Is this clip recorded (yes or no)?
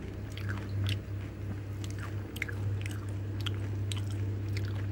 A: yes